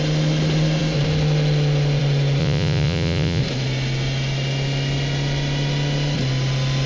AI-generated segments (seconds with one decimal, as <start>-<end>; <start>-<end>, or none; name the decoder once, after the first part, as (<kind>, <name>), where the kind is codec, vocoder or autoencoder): 2.4-3.4 (vocoder, Vocos)